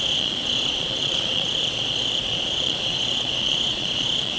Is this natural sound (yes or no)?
no